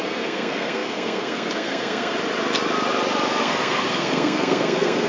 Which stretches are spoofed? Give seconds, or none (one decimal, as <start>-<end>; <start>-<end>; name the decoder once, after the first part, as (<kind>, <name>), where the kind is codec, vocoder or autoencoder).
0.0-2.1 (codec, SNAC); 3.4-5.1